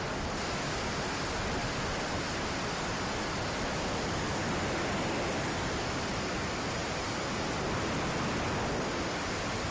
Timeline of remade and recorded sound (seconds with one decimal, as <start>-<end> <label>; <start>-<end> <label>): 0.0-6.8 recorded; 6.8-7.9 remade; 7.9-9.7 recorded